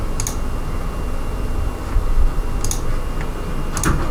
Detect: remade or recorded recorded